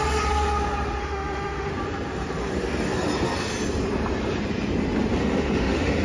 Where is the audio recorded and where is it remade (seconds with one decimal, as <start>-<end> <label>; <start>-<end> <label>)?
0.0-1.0 recorded; 1.0-1.7 remade; 1.7-5.2 recorded; 5.2-6.0 remade